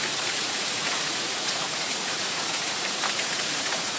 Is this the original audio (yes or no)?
no